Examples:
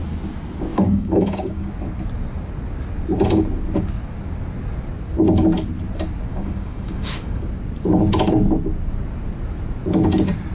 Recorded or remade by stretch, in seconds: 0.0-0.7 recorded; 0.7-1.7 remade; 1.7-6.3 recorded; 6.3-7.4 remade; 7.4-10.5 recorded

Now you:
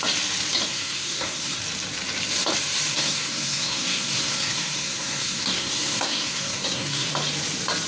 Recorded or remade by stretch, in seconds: 0.0-0.7 recorded; 0.7-1.6 remade; 1.6-2.9 recorded; 2.9-7.1 remade; 7.1-7.9 recorded

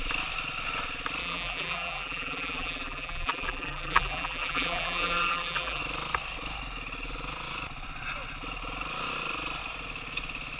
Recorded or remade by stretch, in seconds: 0.0-1.2 recorded; 1.2-5.8 remade; 5.8-10.6 recorded

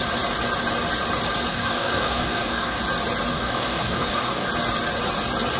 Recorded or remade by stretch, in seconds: 0.0-1.5 recorded; 1.5-2.8 remade; 2.8-3.3 recorded; 3.3-4.5 remade; 4.5-5.6 recorded